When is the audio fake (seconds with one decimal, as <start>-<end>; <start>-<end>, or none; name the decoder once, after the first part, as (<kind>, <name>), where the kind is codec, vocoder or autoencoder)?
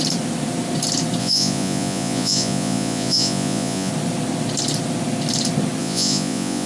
1.2-3.9 (vocoder, Vocos); 5.8-6.7